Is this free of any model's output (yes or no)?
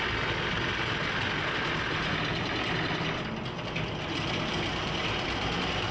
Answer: yes